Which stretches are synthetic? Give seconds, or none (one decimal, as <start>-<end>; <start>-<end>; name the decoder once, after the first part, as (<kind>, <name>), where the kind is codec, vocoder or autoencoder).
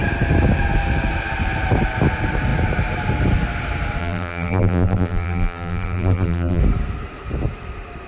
4.0-6.6 (vocoder, BigVGAN v2)